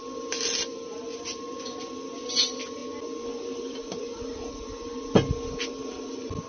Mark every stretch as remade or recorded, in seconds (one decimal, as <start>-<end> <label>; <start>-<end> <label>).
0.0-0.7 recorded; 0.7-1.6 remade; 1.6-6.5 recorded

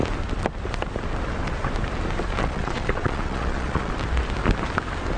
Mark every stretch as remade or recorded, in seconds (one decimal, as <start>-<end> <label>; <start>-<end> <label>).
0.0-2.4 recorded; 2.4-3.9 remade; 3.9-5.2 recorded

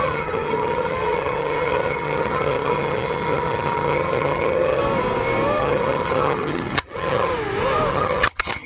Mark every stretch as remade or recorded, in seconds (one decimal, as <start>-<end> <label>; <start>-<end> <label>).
0.0-4.8 remade; 4.8-5.6 recorded; 5.6-7.3 remade; 7.3-7.9 recorded; 7.9-8.7 remade

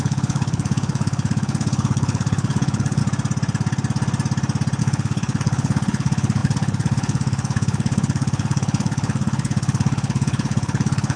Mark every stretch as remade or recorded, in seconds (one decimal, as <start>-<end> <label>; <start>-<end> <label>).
0.0-3.0 remade; 3.0-4.8 recorded; 4.8-11.2 remade

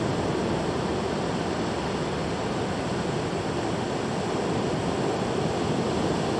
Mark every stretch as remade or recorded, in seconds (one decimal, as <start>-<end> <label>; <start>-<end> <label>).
0.0-6.4 recorded

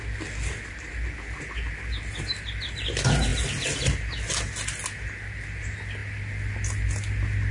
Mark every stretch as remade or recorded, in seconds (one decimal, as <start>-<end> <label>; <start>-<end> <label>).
0.0-7.5 recorded

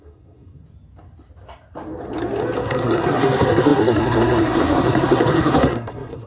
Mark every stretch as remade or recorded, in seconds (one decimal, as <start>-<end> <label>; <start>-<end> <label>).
0.0-0.6 remade; 0.6-2.6 recorded; 2.6-6.3 remade